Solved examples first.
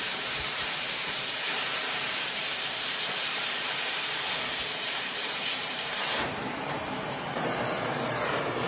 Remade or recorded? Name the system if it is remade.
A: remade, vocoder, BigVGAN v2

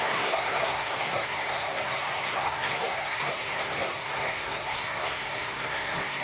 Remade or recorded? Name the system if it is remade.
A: remade, codec, SNAC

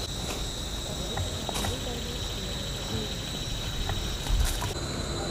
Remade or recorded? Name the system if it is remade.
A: recorded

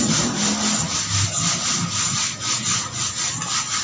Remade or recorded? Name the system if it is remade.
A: recorded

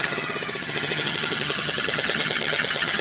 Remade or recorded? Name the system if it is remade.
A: remade, vocoder, HiFi-GAN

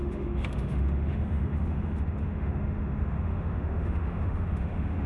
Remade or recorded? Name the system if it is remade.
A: remade, autoencoder, DAC-VAE